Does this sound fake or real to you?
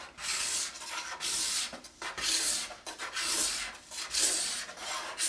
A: real